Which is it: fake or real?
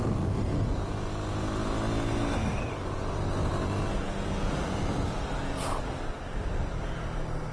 real